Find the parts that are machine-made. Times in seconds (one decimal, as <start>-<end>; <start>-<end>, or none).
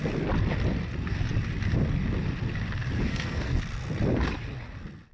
3.1-3.6